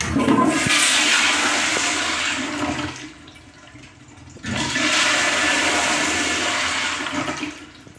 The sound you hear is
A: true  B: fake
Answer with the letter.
A